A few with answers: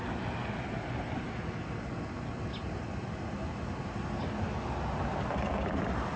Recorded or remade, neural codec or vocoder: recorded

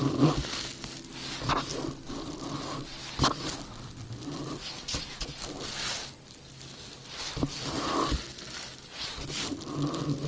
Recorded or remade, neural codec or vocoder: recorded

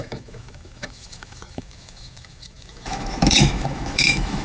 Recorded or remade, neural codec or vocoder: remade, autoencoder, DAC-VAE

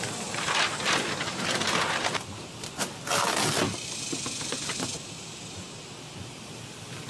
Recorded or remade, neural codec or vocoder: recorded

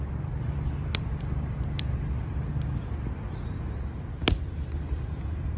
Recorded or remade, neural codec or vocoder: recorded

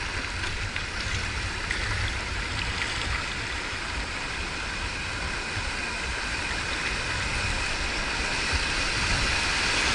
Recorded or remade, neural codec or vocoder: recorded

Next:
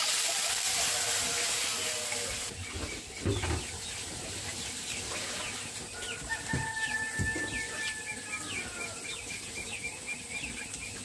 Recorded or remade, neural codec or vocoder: recorded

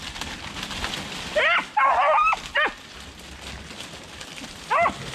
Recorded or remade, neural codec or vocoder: recorded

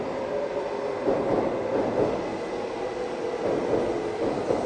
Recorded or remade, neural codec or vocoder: recorded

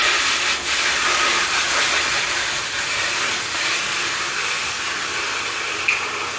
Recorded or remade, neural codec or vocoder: recorded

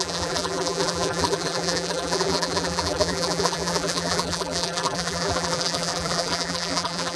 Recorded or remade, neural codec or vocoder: remade, vocoder, BigVGAN v2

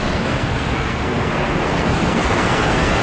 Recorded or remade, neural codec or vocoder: remade, codec, SNAC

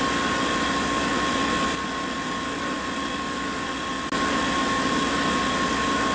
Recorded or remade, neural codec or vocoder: recorded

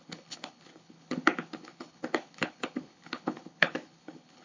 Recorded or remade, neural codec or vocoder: remade, codec, HILCodec